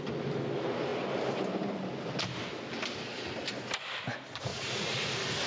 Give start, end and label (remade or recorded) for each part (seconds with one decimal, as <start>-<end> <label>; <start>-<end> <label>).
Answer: 0.0-4.5 recorded; 4.5-5.1 remade; 5.1-5.5 recorded